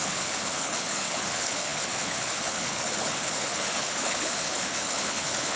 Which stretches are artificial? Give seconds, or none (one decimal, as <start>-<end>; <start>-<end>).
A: 0.0-5.6

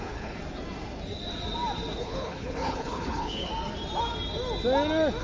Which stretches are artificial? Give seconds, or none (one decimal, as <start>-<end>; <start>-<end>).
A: 0.0-0.4; 2.0-3.5

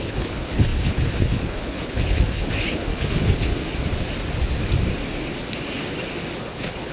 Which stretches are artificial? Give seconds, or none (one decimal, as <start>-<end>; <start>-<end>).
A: 0.0-3.5; 6.4-6.9

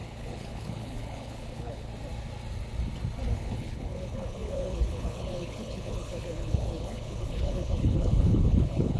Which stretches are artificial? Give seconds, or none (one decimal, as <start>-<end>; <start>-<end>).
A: 0.0-1.9; 3.3-9.0

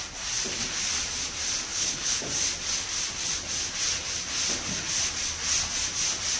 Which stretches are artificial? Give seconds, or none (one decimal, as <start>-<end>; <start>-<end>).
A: 1.7-2.2

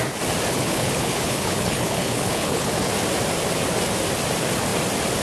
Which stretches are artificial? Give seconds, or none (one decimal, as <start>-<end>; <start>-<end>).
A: 0.5-2.9

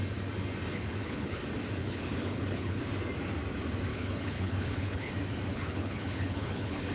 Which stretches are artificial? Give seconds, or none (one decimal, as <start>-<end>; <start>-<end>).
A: 0.7-1.4; 1.8-2.8; 3.9-5.1; 5.5-6.9

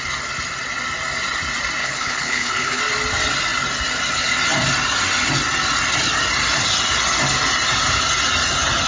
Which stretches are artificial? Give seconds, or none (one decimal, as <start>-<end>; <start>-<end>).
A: 1.8-2.8